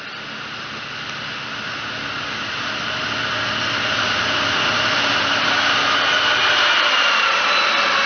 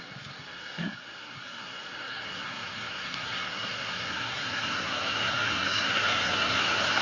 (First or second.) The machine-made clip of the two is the second